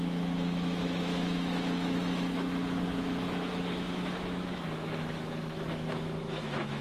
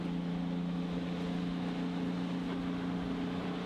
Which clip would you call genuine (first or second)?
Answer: second